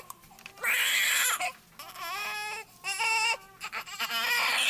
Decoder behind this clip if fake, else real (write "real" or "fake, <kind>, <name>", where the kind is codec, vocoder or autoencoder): real